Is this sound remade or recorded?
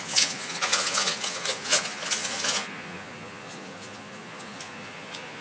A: remade